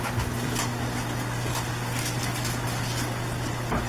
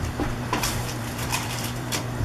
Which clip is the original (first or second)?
first